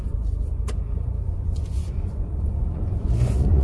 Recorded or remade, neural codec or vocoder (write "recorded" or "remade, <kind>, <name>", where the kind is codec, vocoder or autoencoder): remade, vocoder, Vocos